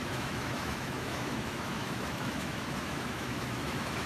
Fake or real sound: fake